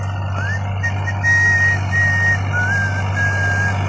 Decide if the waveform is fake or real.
real